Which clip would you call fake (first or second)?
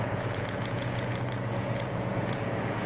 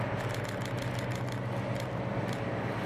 first